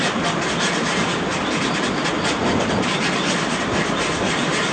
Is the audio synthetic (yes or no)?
no